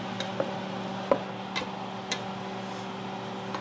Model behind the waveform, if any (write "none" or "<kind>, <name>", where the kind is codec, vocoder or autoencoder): none